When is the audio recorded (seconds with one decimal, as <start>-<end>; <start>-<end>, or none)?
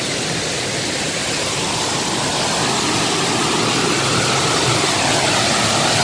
0.0-1.2; 1.8-6.0